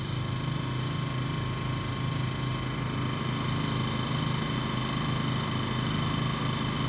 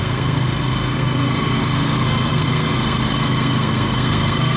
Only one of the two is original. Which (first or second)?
first